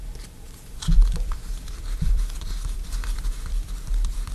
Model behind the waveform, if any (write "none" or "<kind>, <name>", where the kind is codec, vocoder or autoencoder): vocoder, BigVGAN v2